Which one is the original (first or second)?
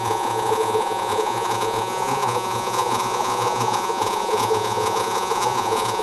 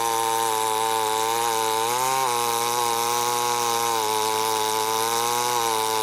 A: second